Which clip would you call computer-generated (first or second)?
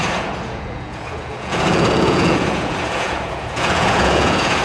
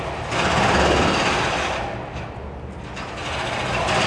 first